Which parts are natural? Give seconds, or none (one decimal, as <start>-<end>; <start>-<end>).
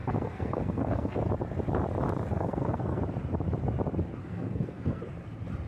1.2-2.3; 3.0-4.2; 5.0-5.7